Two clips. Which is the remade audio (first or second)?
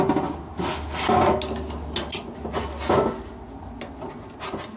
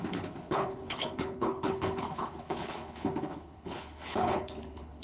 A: second